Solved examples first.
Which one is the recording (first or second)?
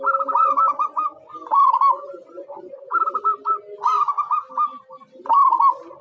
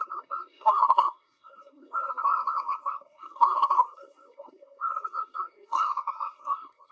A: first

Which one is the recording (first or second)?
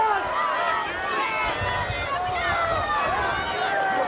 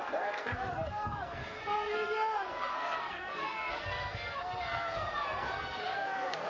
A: first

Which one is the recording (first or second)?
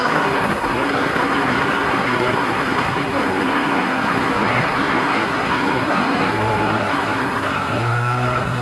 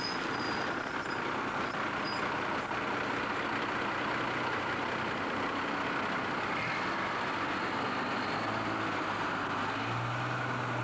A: second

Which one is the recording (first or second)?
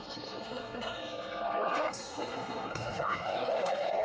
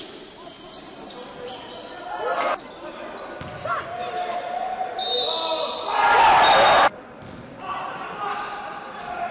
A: second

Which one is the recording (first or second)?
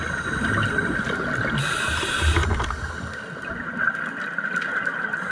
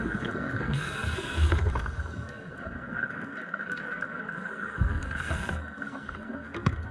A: first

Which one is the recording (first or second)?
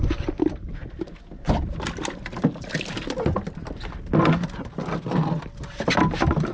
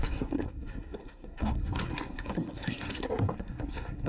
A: first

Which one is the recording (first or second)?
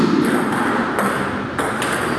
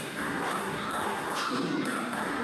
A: first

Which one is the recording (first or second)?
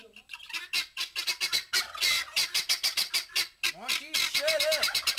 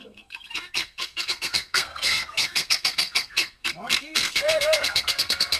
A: first